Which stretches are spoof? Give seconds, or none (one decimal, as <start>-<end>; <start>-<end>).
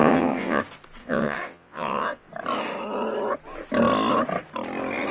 0.0-0.6; 1.0-2.3